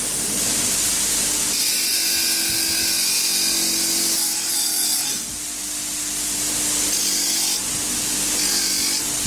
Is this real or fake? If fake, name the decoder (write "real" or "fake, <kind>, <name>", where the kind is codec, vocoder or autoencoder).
real